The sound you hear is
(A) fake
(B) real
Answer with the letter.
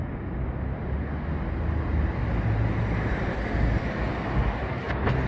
B